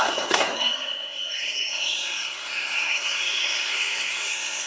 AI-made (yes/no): yes